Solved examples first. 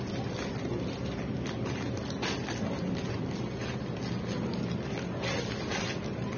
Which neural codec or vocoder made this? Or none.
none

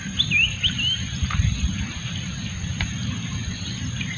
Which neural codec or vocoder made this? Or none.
none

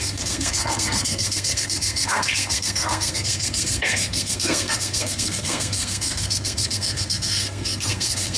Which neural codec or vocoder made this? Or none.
codec, SNAC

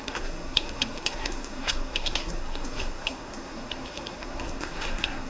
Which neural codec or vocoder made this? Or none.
codec, SNAC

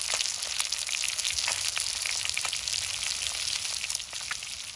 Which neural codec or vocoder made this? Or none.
none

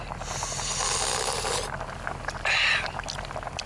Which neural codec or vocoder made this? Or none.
none